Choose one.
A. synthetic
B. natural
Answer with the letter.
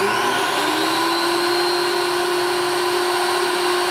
B